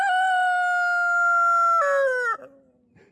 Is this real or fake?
real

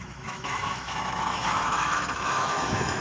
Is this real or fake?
fake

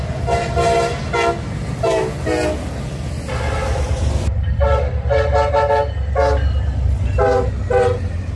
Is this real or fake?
real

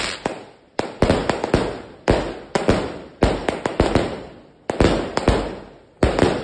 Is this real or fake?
real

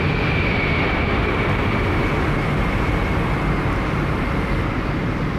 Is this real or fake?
real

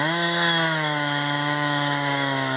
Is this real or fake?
fake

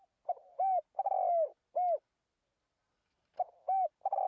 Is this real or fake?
real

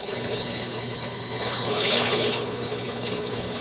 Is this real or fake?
fake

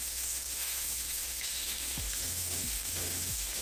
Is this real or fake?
fake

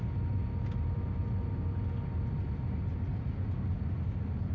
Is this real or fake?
real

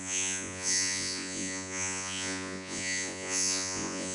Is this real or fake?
fake